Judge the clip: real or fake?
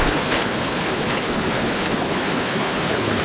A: fake